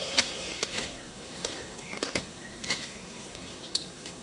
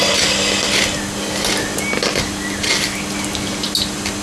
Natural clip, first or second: second